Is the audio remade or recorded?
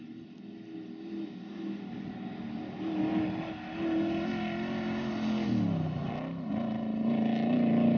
recorded